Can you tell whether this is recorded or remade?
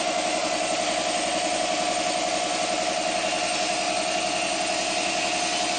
recorded